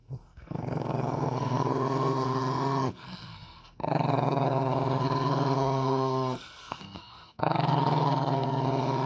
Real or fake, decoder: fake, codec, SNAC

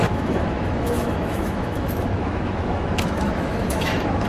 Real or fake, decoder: fake, autoencoder, DAC-VAE